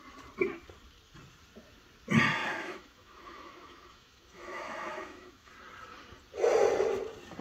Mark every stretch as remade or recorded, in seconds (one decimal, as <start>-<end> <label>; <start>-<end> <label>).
0.0-2.4 recorded; 2.4-5.5 remade; 5.5-7.4 recorded